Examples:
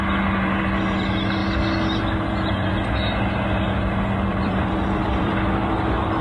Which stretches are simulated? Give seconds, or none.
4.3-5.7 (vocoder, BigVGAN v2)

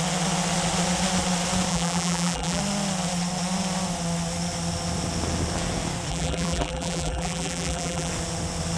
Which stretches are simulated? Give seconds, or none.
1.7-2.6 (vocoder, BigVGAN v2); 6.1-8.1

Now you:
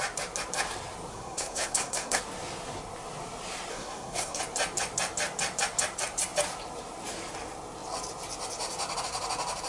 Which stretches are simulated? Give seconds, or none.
1.1-2.2 (codec, SNAC); 3.7-4.4